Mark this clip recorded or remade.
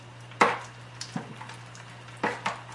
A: recorded